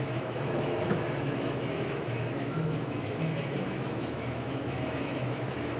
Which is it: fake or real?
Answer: fake